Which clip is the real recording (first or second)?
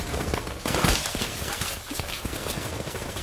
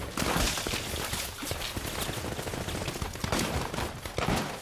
second